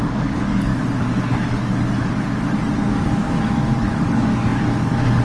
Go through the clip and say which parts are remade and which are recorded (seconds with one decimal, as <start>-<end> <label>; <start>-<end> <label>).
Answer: 0.0-0.7 remade; 0.7-2.8 recorded; 2.8-5.2 remade